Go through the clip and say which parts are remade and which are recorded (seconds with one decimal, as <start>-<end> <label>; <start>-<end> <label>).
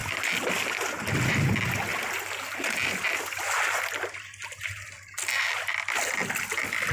0.0-6.9 recorded